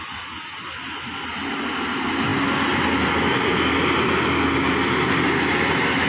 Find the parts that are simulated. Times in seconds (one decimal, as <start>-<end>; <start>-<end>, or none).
none

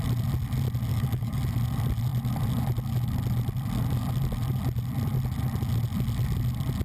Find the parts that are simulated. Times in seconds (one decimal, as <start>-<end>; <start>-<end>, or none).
0.9-1.4

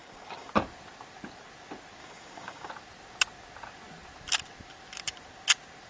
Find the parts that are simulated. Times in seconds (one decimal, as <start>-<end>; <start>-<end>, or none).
0.0-0.5; 2.0-2.7

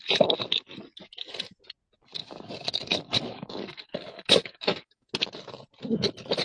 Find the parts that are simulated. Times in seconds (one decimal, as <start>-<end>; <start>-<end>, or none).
2.2-5.1

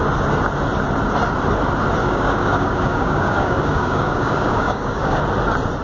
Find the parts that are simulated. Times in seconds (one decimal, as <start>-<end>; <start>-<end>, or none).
2.0-5.2

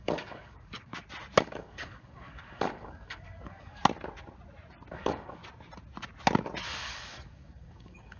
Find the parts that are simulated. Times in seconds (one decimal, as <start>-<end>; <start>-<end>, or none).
0.0-0.9; 1.4-3.8; 4.9-5.4; 6.6-8.2

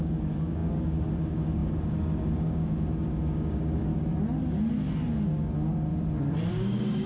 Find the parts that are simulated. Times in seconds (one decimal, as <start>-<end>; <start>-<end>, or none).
0.0-3.9; 6.5-7.1

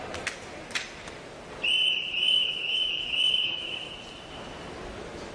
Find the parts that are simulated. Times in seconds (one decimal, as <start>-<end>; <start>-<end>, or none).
2.1-3.9